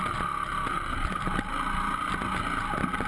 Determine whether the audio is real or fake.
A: real